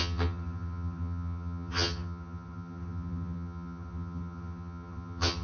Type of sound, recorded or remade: remade